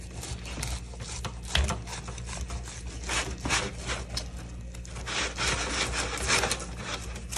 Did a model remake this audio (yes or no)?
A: no